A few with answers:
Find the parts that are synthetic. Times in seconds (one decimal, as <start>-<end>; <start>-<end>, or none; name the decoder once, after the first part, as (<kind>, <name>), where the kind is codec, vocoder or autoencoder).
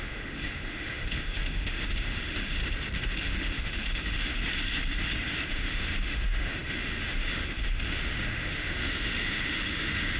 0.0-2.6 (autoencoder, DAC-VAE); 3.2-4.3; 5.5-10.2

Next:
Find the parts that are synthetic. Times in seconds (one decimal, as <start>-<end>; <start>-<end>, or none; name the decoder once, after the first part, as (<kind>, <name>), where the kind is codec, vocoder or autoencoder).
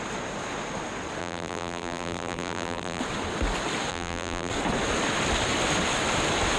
1.2-3.0 (vocoder, BigVGAN v2); 3.9-4.5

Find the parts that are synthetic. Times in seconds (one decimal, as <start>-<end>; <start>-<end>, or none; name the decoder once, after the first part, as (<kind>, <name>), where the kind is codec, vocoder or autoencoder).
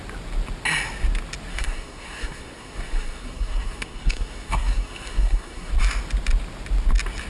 1.5-5.7 (codec, SNAC)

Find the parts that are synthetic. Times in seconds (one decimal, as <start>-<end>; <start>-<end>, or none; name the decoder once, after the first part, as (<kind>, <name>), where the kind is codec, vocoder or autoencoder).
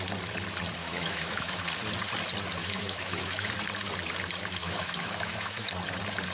0.8-1.6 (autoencoder, DAC-VAE); 2.6-3.5; 4.6-5.7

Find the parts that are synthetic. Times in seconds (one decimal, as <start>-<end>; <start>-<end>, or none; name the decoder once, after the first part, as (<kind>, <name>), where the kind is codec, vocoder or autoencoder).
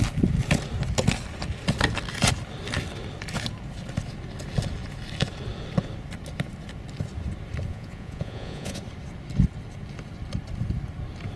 7.7-8.8 (vocoder, Vocos)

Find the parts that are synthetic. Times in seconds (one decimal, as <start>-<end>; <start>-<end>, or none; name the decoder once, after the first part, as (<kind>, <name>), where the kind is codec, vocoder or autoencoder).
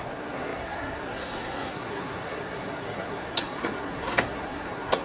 0.0-5.0 (codec, SNAC)